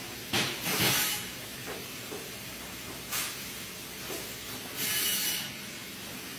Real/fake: real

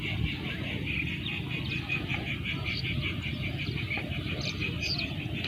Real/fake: fake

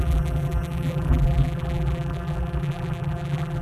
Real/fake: fake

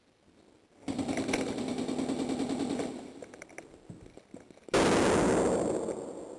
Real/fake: real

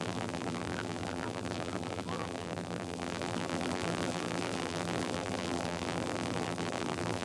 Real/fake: fake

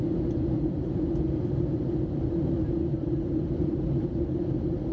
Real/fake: fake